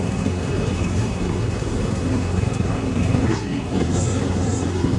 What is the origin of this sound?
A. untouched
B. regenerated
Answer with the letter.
B